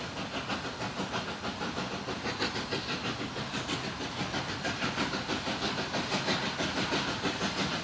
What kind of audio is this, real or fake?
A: real